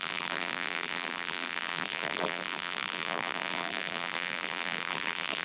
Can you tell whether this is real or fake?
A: fake